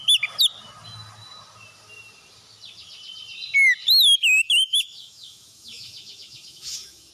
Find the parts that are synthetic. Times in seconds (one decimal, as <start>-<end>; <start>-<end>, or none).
4.2-7.1